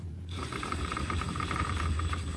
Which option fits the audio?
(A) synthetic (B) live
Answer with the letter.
A